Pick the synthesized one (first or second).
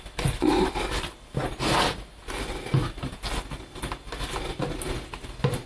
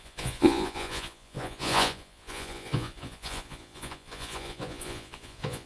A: second